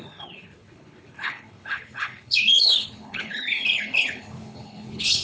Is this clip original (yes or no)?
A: no